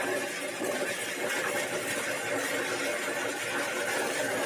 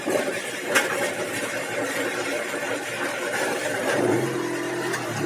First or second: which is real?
first